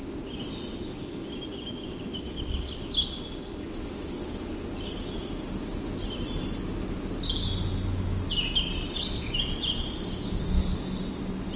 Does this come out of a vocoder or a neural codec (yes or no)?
no